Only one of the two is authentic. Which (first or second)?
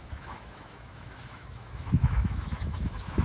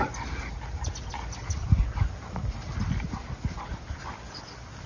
second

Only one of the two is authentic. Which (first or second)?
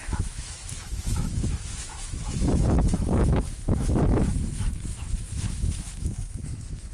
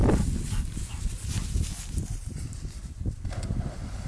second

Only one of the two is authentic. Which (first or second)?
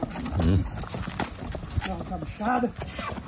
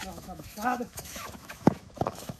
first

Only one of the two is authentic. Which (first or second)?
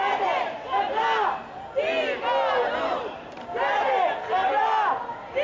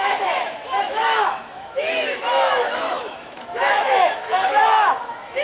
first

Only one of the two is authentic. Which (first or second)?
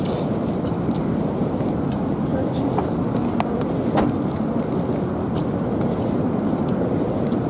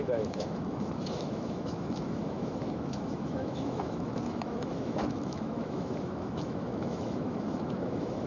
first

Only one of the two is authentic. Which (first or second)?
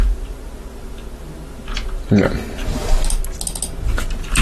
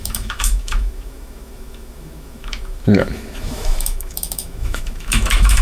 first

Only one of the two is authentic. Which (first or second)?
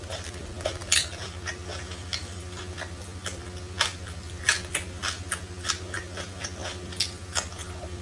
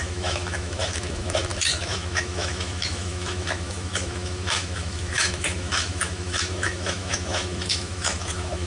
first